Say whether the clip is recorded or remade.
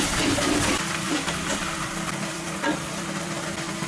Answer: remade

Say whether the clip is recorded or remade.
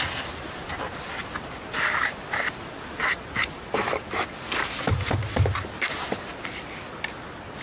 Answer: recorded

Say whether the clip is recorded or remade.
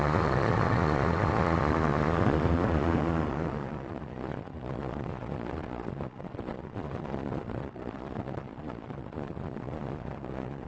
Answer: remade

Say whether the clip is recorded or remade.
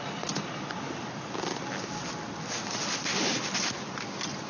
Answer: recorded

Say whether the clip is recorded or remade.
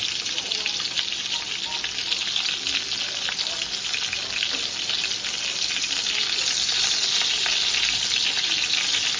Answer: recorded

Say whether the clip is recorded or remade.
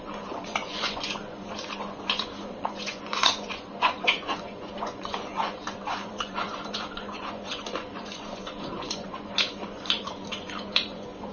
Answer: remade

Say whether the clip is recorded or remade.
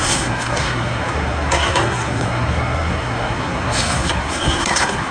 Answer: remade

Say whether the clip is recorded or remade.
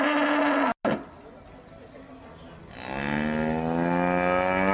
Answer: recorded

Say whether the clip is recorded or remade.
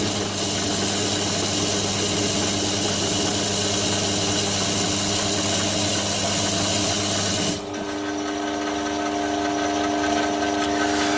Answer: recorded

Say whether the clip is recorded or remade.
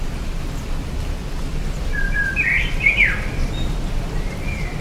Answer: remade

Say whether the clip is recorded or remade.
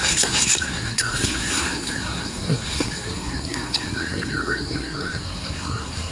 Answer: remade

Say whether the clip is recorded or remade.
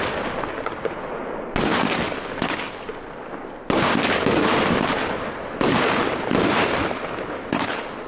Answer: recorded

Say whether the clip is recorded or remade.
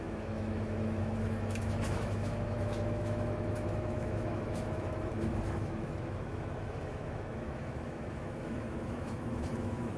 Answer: remade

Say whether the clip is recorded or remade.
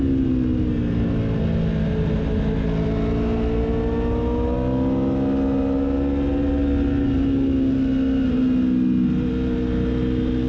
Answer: recorded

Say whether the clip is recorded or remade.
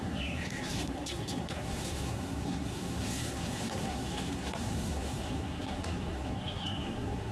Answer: remade